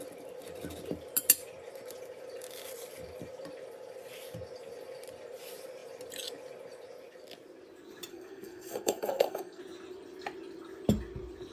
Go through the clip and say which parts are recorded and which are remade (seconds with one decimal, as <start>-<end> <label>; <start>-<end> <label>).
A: 0.0-8.1 recorded; 8.1-9.6 remade; 9.6-11.5 recorded